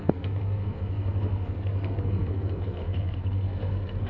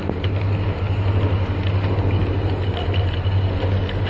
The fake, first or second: first